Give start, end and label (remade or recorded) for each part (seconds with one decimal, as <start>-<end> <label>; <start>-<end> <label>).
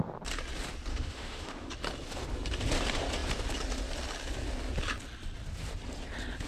0.0-0.9 recorded; 0.9-1.7 remade; 1.7-6.5 recorded